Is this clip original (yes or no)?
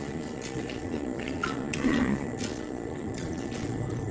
no